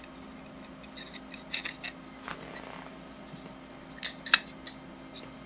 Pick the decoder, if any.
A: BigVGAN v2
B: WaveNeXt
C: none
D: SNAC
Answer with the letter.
C